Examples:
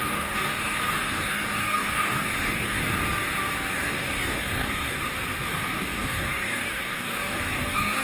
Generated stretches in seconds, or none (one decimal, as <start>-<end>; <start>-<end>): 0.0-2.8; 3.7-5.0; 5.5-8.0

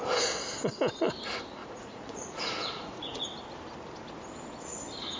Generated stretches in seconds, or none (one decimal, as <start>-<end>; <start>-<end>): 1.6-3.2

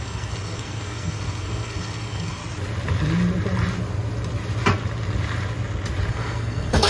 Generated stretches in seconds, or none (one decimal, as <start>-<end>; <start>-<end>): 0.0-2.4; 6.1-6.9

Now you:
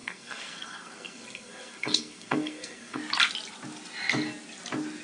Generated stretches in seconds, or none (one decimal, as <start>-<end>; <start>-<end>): 0.0-3.0

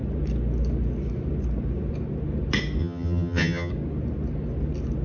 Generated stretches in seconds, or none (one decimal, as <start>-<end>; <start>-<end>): 2.8-3.7

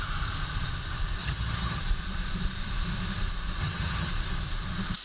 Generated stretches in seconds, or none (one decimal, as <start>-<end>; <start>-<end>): 1.2-1.8; 3.6-4.1

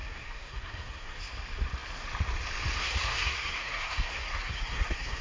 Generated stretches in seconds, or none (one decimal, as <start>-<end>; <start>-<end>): 0.0-1.2; 2.8-5.2

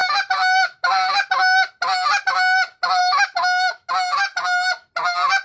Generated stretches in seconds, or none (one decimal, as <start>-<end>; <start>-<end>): 0.0-1.7; 3.0-3.9